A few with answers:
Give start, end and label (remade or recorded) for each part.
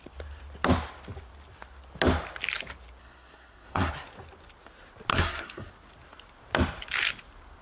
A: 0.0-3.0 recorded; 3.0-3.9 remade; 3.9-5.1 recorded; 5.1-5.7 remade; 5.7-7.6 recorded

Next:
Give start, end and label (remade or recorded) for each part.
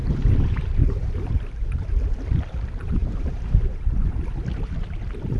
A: 0.0-1.8 remade; 1.8-3.0 recorded; 3.0-4.1 remade; 4.1-5.4 recorded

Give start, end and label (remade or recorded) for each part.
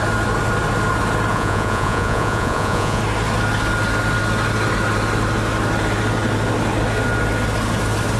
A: 0.0-1.3 recorded; 1.3-3.0 remade; 3.0-8.2 recorded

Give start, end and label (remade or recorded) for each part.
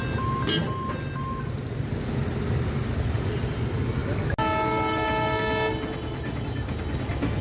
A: 0.0-7.4 recorded